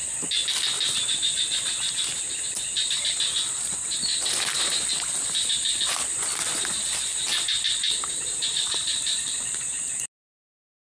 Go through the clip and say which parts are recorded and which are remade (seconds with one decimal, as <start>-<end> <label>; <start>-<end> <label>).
0.0-7.1 recorded; 7.1-9.9 remade; 9.9-10.8 recorded